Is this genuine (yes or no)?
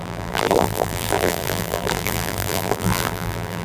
no